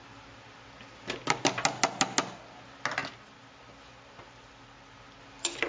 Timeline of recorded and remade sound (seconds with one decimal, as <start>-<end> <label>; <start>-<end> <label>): 0.0-5.7 recorded